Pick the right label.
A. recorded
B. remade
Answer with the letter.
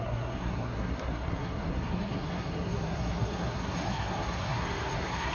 B